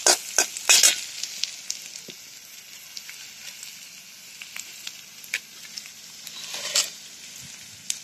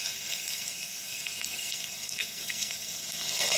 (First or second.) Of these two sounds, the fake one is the second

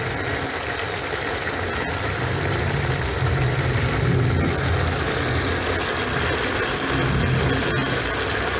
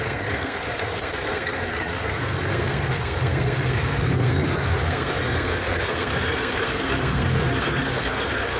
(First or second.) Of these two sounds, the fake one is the second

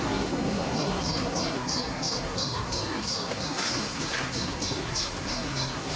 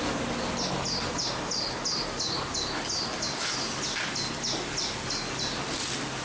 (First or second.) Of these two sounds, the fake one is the first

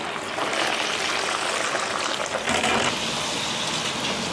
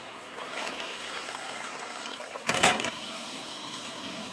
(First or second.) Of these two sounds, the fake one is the second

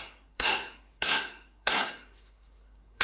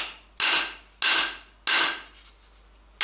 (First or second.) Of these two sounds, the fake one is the first